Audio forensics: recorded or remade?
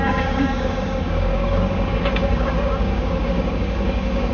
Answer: remade